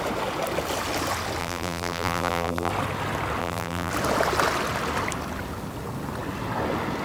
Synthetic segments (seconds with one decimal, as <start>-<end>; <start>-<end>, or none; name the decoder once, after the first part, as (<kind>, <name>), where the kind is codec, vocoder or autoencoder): 1.4-2.7 (vocoder, BigVGAN v2); 3.4-3.9